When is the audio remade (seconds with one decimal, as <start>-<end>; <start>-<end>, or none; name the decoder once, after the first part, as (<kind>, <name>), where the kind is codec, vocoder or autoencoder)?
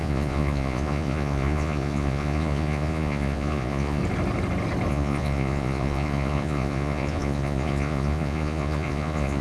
0.0-4.0 (vocoder, Vocos); 4.9-9.4